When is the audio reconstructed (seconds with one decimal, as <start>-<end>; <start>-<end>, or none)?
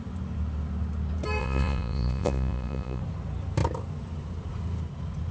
1.4-3.0